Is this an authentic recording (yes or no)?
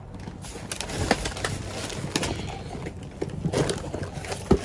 yes